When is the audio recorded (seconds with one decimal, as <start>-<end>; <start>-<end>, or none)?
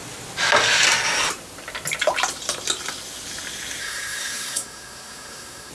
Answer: 0.0-3.8